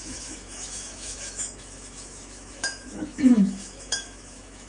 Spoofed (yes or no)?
yes